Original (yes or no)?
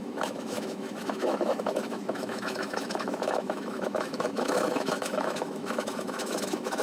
no